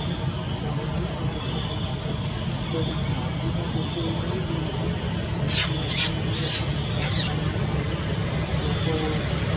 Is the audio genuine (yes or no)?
yes